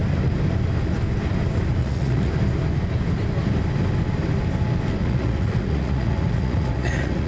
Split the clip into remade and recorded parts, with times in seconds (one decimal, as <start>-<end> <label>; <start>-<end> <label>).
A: 0.0-1.8 recorded; 1.8-2.3 remade; 2.3-5.0 recorded; 5.0-7.3 remade